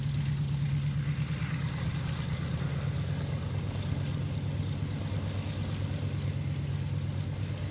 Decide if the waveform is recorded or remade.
recorded